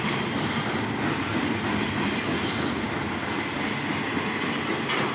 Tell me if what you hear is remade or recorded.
recorded